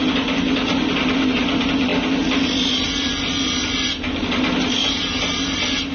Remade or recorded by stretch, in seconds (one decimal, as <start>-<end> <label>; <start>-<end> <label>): 0.0-5.9 recorded